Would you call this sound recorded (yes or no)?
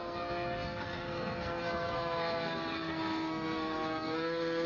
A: no